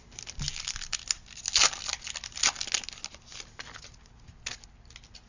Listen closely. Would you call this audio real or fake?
real